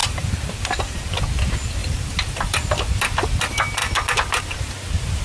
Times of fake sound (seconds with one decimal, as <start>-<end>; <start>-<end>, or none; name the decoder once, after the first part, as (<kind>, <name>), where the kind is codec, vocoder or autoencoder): 0.0-1.1 (vocoder, BigVGAN v2); 1.8-2.7